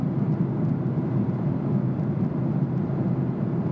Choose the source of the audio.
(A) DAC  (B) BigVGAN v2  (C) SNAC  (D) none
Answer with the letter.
D